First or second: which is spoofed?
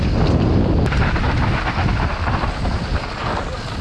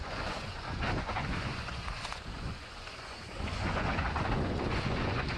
second